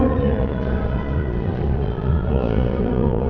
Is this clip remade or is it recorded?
remade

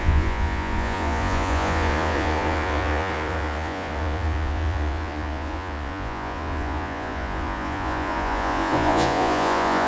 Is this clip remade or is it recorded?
remade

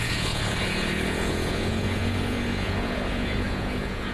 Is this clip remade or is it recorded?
remade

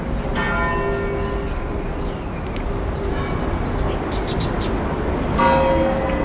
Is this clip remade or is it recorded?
recorded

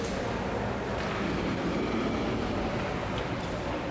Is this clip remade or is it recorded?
recorded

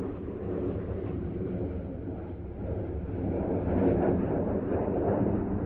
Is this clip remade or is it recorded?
recorded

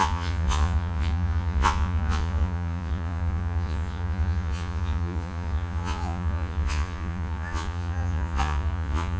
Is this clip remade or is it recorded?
remade